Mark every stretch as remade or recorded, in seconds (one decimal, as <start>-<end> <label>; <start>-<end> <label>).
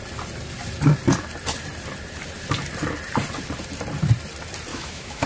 0.0-4.7 recorded; 4.7-5.3 remade